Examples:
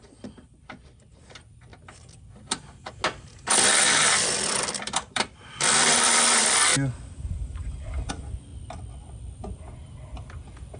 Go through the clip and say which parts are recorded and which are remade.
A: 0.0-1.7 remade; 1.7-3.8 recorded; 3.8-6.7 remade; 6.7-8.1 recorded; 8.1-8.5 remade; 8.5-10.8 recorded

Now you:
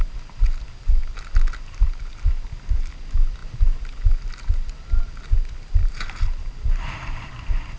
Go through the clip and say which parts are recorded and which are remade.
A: 0.0-5.8 recorded; 5.8-7.3 remade; 7.3-7.8 recorded

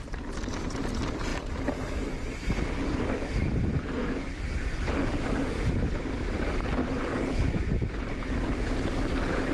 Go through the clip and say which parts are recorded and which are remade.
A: 0.0-6.8 recorded; 6.8-7.7 remade; 7.7-9.5 recorded

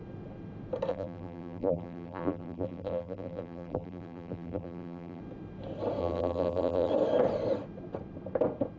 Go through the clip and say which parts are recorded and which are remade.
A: 0.0-0.9 recorded; 0.9-5.2 remade; 5.2-6.0 recorded; 6.0-6.9 remade; 6.9-8.8 recorded